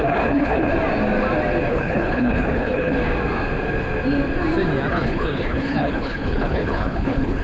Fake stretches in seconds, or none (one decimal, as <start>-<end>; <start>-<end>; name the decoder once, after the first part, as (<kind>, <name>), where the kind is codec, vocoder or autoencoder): 0.0-0.7 (codec, HILCodec); 1.7-3.0; 4.9-7.4